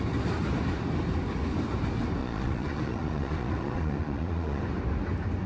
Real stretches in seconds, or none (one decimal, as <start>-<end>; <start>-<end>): 0.0-2.2; 4.6-5.5